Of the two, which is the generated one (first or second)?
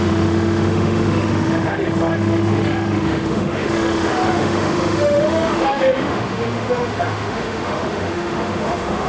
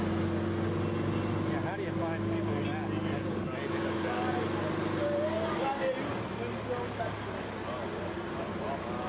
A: first